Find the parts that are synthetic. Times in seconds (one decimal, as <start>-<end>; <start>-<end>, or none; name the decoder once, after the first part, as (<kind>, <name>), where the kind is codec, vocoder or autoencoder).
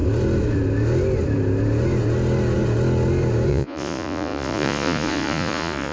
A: 3.5-5.9 (vocoder, Vocos)